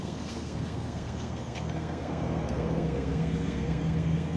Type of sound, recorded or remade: remade